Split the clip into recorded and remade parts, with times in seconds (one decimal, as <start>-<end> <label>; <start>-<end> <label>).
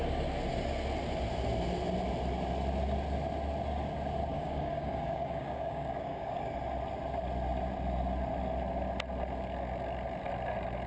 0.0-4.3 recorded; 4.3-6.5 remade; 6.5-10.9 recorded